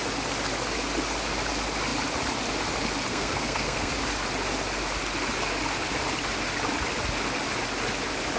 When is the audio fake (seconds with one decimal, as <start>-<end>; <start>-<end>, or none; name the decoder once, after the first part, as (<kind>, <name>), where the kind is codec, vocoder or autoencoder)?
3.1-3.9 (codec, SNAC)